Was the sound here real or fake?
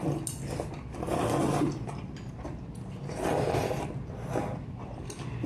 real